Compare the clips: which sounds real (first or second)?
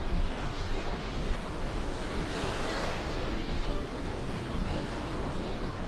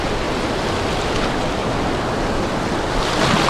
second